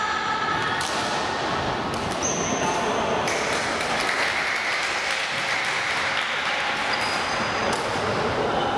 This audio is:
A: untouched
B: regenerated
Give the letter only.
A